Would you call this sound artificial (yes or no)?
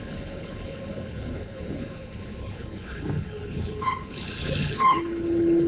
yes